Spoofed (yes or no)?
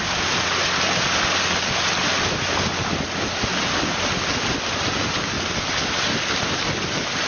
no